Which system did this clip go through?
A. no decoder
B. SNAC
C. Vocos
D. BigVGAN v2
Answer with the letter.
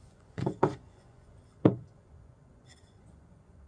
C